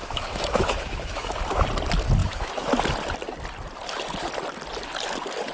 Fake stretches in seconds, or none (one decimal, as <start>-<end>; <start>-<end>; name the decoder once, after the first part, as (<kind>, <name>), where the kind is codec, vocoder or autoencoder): 0.0-1.6 (autoencoder, DAC-VAE); 2.2-2.7

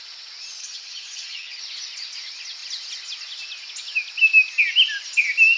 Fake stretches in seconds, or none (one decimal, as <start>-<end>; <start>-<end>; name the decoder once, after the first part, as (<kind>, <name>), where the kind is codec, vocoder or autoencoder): 0.6-1.6 (vocoder, HiFi-GAN)

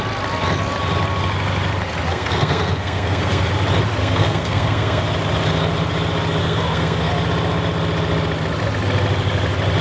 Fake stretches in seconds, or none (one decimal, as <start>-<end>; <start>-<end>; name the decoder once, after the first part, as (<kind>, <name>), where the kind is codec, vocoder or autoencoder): 2.1-3.5 (codec, SNAC); 4.0-5.0; 6.4-7.1